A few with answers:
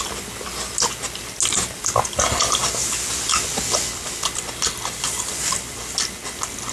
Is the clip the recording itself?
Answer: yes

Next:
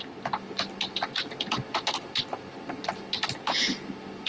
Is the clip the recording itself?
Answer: yes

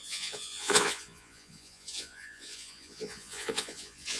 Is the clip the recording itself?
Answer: no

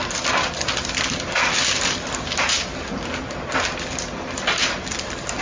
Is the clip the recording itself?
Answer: yes